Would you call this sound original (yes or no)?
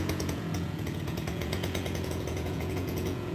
no